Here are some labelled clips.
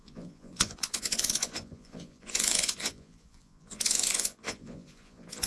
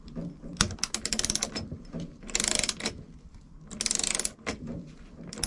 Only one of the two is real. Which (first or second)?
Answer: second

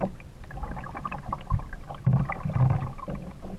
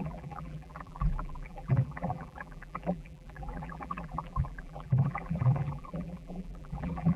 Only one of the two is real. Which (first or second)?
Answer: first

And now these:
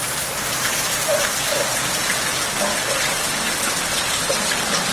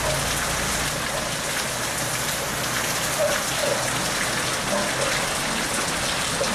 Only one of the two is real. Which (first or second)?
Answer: second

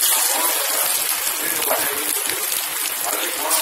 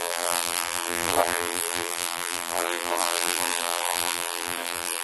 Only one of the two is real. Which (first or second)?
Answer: first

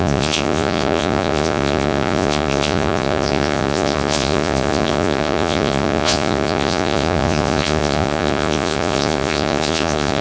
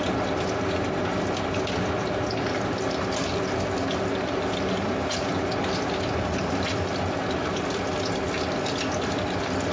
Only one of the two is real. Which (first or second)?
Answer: second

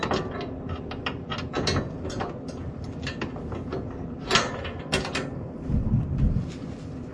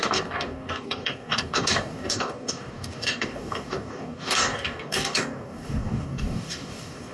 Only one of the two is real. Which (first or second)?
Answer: first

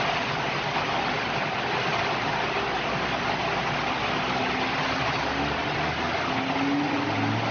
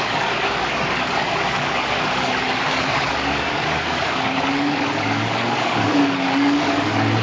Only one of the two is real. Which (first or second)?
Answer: first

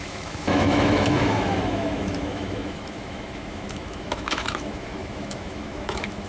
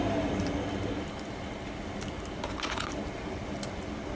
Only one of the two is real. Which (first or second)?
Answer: second